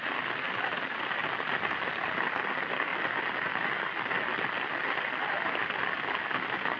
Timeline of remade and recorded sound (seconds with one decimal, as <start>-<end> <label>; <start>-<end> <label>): 0.0-6.8 recorded